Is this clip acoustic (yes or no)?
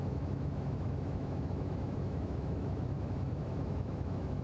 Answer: no